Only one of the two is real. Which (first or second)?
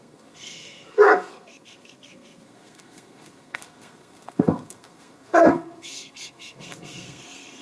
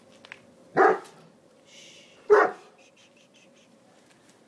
second